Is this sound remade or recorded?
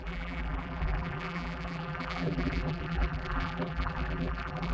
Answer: remade